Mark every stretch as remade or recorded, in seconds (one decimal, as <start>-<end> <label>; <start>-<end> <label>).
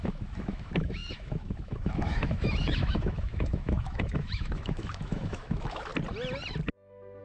0.0-5.9 remade; 5.9-7.2 recorded